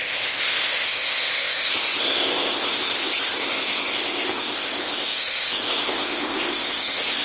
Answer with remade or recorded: remade